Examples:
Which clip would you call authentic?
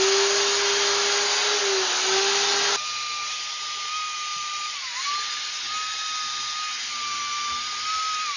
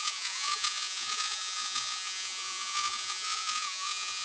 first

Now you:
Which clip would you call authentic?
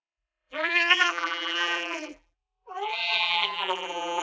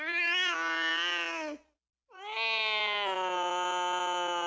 second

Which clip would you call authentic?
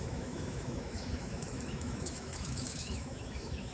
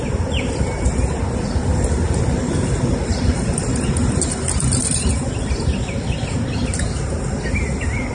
second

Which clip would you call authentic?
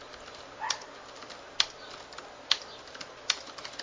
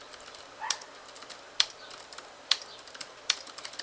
first